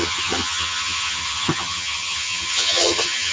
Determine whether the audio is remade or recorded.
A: remade